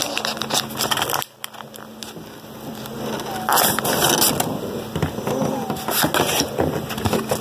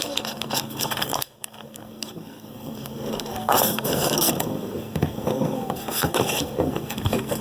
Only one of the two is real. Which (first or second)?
first